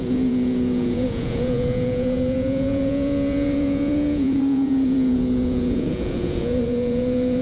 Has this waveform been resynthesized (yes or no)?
yes